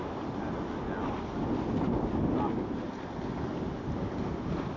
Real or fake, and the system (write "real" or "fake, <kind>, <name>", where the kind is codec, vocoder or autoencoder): real